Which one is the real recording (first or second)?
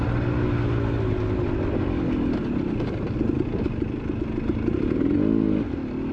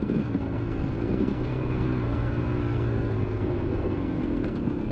first